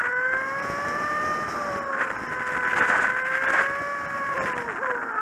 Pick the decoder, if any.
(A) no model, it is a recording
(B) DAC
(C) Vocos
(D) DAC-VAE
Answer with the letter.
A